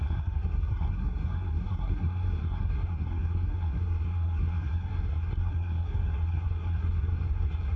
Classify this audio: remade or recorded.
remade